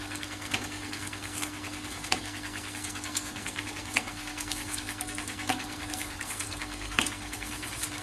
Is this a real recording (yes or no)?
no